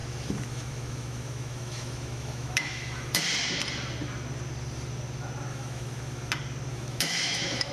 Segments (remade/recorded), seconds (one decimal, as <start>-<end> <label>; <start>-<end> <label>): 0.0-3.2 remade; 3.2-5.5 recorded; 5.5-6.3 remade; 6.3-6.7 recorded; 6.7-7.7 remade